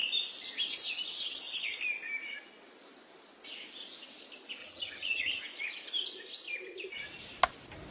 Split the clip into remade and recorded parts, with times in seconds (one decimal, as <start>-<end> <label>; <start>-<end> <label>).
0.0-4.6 recorded; 4.6-5.4 remade; 5.4-7.9 recorded